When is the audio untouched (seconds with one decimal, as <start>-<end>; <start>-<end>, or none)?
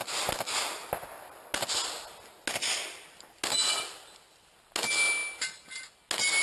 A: 0.0-6.4